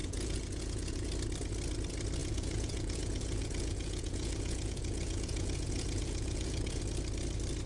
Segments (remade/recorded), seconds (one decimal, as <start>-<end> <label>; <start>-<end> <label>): 0.0-1.1 remade; 1.1-2.2 recorded; 2.2-6.8 remade; 6.8-7.7 recorded